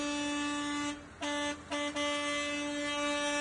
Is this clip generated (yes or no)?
no